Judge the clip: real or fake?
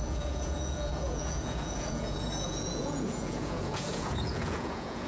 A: fake